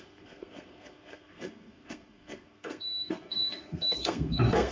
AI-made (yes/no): yes